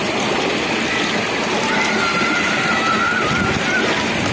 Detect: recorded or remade recorded